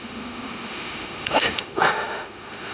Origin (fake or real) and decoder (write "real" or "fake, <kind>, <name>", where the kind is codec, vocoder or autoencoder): fake, autoencoder, DAC-VAE